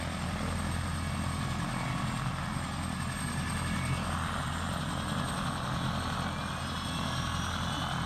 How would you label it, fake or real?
real